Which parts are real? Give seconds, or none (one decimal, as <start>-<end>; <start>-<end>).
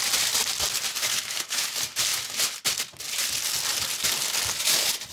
0.0-1.0; 1.7-5.1